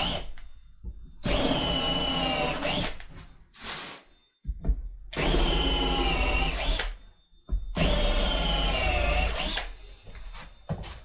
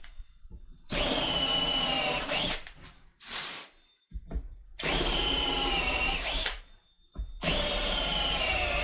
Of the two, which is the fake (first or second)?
second